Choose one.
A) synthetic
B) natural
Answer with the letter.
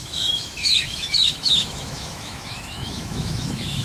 A